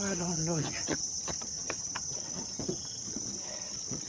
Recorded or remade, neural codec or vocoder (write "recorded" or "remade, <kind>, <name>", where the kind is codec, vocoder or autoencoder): remade, vocoder, HiFi-GAN